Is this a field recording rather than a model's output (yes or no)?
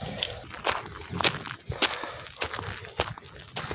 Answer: yes